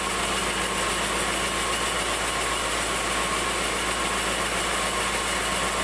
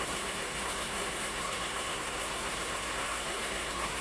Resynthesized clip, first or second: second